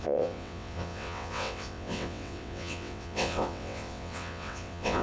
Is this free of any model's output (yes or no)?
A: no